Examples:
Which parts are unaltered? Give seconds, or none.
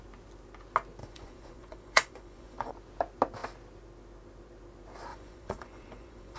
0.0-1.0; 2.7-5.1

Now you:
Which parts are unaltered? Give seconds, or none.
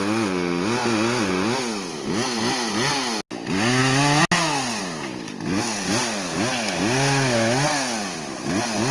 0.0-8.9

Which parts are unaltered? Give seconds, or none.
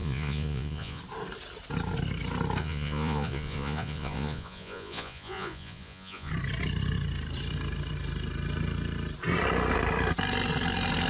1.0-2.6; 6.3-11.1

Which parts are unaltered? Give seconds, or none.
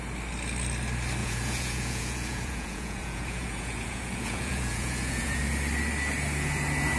0.0-1.2; 5.4-7.0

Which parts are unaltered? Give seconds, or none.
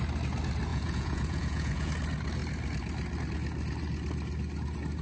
0.0-0.7; 1.9-5.0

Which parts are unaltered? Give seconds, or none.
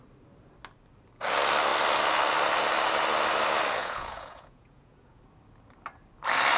0.0-3.8; 5.2-6.6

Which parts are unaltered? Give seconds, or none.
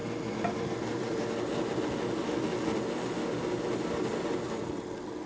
0.0-5.3